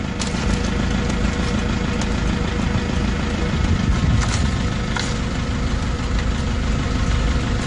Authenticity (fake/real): real